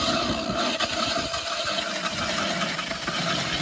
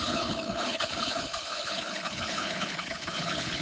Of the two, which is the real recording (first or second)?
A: first